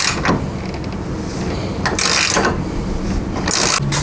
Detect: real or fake real